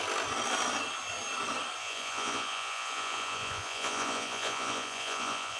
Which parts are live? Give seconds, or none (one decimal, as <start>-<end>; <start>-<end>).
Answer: 0.0-1.8